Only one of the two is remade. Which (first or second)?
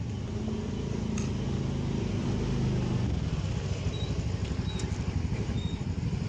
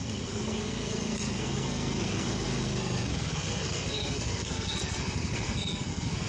second